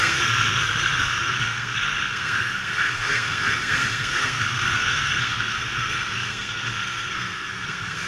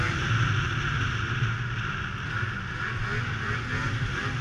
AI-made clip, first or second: first